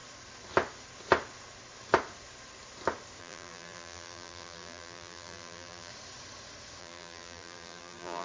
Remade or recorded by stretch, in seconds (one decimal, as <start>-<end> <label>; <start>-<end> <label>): 0.0-3.2 recorded; 3.2-5.9 remade; 5.9-6.8 recorded; 6.8-8.2 remade